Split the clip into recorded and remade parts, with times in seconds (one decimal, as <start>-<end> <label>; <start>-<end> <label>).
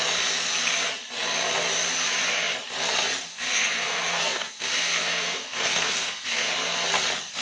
0.0-3.3 recorded; 3.3-6.5 remade; 6.5-7.4 recorded